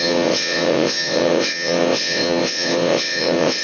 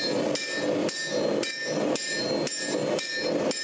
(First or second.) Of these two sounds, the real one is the second